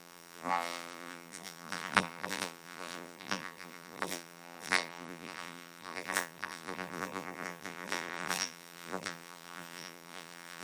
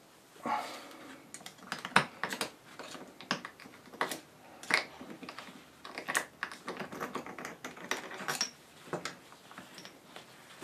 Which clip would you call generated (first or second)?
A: first